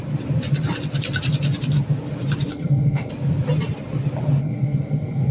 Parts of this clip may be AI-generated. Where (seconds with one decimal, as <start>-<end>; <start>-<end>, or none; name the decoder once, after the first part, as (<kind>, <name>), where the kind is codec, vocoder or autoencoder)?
2.5-3.1 (codec, SNAC); 4.4-5.3